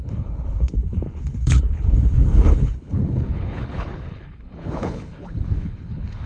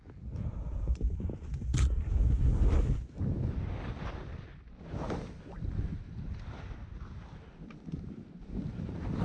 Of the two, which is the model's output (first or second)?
first